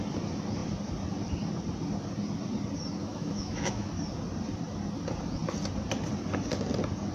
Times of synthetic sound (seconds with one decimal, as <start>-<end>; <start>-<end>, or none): 3.0-3.9